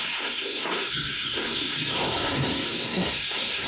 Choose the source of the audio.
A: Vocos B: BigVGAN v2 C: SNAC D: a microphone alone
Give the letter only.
C